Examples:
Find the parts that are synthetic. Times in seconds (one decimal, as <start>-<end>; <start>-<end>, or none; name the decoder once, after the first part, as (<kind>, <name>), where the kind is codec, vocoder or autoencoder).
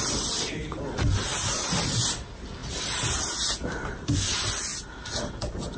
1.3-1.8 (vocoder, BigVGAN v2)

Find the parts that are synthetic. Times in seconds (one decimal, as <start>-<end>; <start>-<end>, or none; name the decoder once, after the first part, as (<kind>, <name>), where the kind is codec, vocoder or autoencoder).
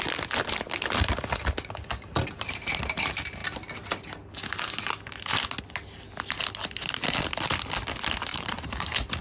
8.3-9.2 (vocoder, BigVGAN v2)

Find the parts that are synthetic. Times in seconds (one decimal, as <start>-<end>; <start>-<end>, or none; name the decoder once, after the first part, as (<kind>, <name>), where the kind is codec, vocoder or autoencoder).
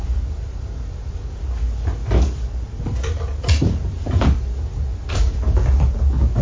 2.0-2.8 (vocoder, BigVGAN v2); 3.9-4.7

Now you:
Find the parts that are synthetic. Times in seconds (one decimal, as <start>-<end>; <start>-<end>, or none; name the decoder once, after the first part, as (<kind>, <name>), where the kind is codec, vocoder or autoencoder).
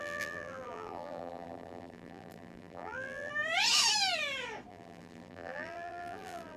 0.0-3.3 (vocoder, BigVGAN v2); 4.7-6.6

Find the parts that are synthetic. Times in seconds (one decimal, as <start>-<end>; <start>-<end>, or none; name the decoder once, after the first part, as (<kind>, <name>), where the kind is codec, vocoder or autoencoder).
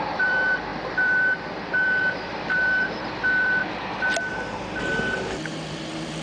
0.0-3.6 (vocoder, BigVGAN v2); 4.3-6.2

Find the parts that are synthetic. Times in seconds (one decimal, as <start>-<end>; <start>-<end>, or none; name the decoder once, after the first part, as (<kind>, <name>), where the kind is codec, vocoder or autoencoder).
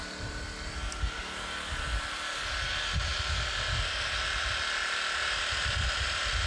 0.0-3.1 (vocoder, BigVGAN v2); 6.0-6.5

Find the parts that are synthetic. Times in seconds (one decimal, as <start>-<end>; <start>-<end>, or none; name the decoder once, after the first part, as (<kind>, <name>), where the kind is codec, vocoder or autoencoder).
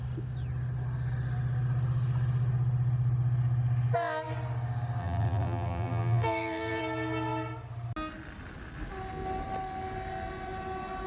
5.0-6.8 (vocoder, BigVGAN v2)